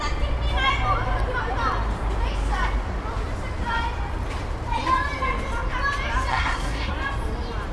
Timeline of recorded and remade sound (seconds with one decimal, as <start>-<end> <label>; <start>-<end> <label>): 0.0-6.3 recorded; 6.3-6.9 remade; 6.9-7.7 recorded